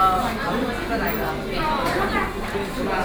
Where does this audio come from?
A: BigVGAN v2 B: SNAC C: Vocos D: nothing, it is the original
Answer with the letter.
D